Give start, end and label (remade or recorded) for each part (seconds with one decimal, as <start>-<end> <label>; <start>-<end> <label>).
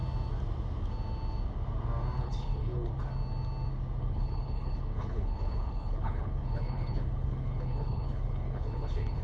0.0-2.2 recorded; 2.2-2.9 remade; 2.9-4.0 recorded; 4.0-9.2 remade